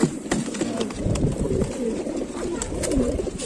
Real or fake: fake